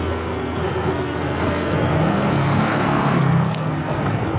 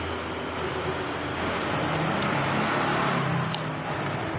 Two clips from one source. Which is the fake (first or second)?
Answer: first